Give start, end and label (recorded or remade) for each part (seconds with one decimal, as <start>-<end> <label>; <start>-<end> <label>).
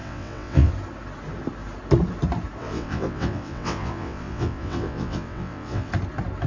0.0-0.7 remade; 0.7-2.6 recorded; 2.6-5.9 remade; 5.9-6.5 recorded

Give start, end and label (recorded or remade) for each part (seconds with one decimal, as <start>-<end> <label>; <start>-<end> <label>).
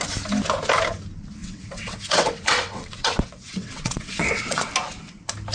0.0-1.4 recorded; 1.4-4.7 remade; 4.7-5.5 recorded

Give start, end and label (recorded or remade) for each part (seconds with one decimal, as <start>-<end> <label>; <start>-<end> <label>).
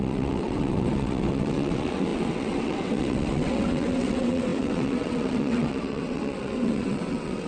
0.0-7.5 remade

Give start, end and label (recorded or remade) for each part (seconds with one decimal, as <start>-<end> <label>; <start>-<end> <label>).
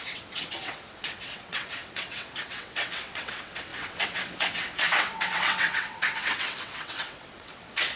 0.0-8.0 remade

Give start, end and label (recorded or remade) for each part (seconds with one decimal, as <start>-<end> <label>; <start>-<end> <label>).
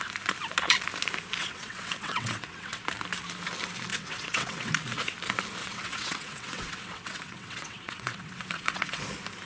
0.0-1.4 recorded; 1.4-2.8 remade; 2.8-3.9 recorded; 3.9-4.7 remade; 4.7-5.6 recorded; 5.6-9.0 remade; 9.0-9.5 recorded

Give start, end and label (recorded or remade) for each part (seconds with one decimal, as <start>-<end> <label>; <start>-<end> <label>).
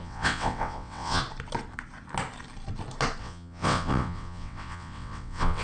0.0-1.2 remade; 1.2-3.2 recorded; 3.2-5.6 remade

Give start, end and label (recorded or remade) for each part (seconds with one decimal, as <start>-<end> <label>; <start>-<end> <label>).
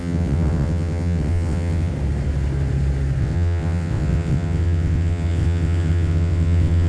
0.0-1.9 remade; 1.9-3.2 recorded; 3.2-6.9 remade